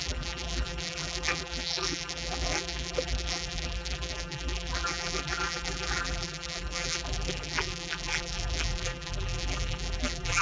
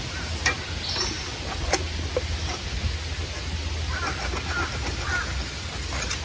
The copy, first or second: first